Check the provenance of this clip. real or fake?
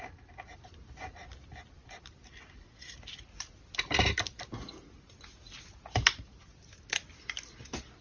real